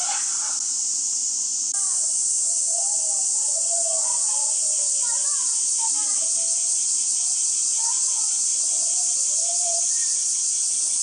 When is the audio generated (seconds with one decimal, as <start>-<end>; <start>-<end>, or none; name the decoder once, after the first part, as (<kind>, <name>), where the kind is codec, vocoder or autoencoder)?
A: 8.5-9.9 (vocoder, BigVGAN v2)